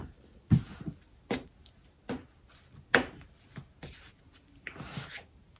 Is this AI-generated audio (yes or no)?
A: no